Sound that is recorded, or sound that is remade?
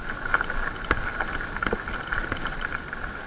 recorded